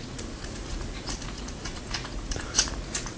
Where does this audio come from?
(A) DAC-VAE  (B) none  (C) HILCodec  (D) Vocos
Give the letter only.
D